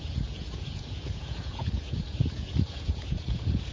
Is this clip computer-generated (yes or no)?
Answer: yes